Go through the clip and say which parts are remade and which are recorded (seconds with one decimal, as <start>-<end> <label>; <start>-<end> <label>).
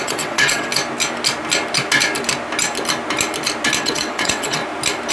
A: 0.0-0.7 remade; 0.7-3.8 recorded; 3.8-4.6 remade; 4.6-5.1 recorded